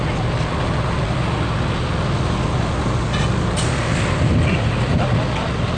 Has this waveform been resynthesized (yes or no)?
no